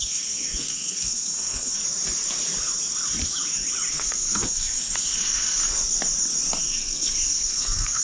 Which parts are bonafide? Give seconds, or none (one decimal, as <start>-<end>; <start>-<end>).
1.8-3.9; 5.6-6.6